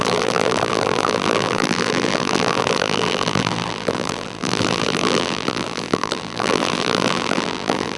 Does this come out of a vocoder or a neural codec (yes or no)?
yes